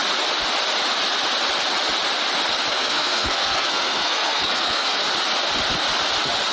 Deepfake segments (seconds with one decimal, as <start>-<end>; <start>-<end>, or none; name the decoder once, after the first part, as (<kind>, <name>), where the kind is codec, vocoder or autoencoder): 2.7-5.0 (codec, SNAC)